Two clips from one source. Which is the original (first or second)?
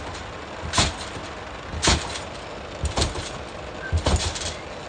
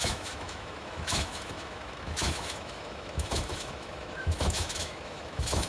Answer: first